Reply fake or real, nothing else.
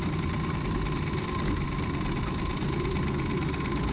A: real